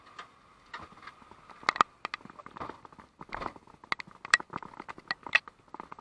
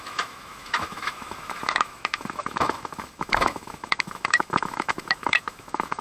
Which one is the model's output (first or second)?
second